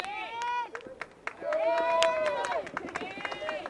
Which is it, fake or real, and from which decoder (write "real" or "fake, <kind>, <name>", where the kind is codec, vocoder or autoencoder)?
real